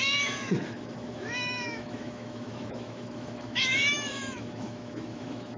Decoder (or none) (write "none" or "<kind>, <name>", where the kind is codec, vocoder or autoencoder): autoencoder, DAC-VAE